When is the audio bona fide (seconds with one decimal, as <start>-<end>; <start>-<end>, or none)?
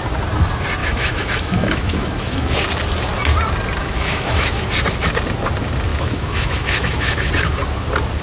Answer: 0.0-0.8; 2.5-3.8; 4.6-5.9; 7.3-8.2